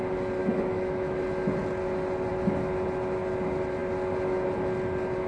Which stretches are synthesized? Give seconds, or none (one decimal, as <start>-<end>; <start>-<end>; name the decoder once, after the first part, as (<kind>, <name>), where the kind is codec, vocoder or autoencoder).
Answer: 0.4-1.2 (autoencoder, DAC-VAE)